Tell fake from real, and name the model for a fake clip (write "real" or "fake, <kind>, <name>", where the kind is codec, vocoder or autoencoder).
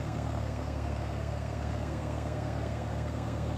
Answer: fake, codec, SNAC